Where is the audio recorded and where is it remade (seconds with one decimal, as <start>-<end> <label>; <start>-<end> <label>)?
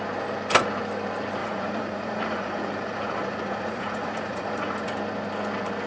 0.0-1.4 recorded; 1.4-4.9 remade; 4.9-5.9 recorded